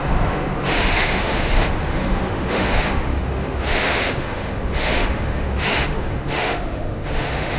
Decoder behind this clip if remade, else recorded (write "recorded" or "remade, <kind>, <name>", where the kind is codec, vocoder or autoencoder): remade, autoencoder, DAC-VAE